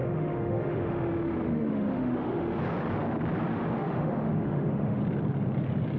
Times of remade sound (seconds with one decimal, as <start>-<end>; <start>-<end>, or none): 0.0-2.6; 3.5-5.0